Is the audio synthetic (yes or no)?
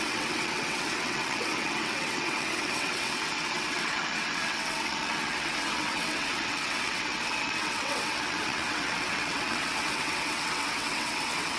yes